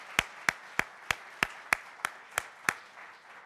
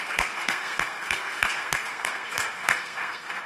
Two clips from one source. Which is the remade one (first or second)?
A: second